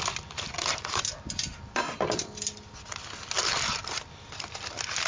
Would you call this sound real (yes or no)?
yes